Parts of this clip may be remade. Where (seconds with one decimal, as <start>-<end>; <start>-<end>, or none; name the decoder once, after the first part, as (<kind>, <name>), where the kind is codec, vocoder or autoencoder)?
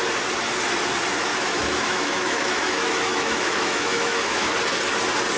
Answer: 1.3-4.5 (autoencoder, DAC-VAE)